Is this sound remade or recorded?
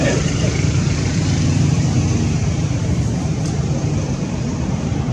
remade